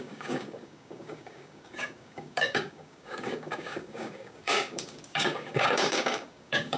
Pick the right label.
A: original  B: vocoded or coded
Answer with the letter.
B